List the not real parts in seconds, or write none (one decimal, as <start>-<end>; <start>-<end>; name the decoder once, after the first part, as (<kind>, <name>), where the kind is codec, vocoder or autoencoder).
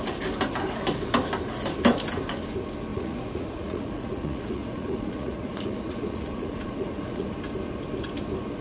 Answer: 2.9-7.3 (vocoder, Vocos)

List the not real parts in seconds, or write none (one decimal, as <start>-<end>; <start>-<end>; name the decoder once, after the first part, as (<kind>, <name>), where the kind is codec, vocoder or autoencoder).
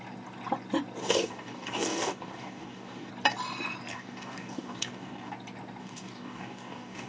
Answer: 1.0-3.1 (codec, DAC); 3.9-5.3; 5.8-7.1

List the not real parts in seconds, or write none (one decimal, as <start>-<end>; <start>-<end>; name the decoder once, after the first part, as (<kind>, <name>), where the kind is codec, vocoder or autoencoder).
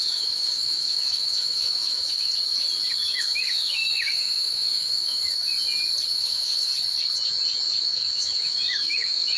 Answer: 0.0-2.3 (autoencoder, DAC-VAE); 2.9-5.5; 6.1-6.7; 7.8-9.4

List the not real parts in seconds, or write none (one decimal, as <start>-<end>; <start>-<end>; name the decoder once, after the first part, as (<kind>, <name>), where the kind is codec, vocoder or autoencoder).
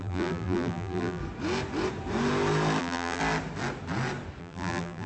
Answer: 0.0-1.2 (vocoder, BigVGAN v2); 2.8-3.2; 4.4-5.1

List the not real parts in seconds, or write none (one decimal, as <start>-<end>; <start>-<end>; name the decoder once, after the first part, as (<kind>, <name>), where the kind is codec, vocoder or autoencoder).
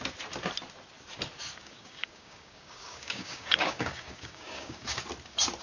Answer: 1.6-5.0 (codec, DAC)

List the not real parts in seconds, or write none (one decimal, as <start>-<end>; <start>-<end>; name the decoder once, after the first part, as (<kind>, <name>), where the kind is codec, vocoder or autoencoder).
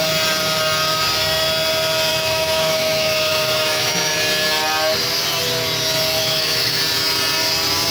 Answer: 2.1-4.1 (autoencoder, DAC-VAE); 6.2-6.8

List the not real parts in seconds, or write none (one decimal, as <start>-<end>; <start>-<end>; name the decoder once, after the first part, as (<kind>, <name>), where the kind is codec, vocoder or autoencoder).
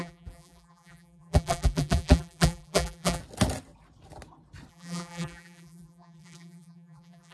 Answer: 0.0-3.2 (vocoder, BigVGAN v2); 4.7-7.3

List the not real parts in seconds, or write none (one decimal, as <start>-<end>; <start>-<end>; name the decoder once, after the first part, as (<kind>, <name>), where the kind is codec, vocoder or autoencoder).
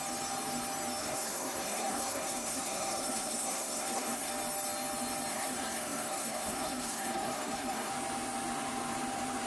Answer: 1.0-4.3 (codec, SNAC); 5.3-7.9